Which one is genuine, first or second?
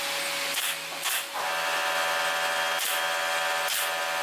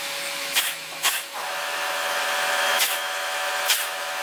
first